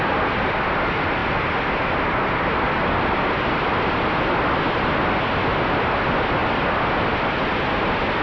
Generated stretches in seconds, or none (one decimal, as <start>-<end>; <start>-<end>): none